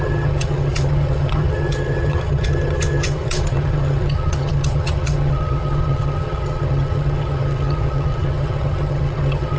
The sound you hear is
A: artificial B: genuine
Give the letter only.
A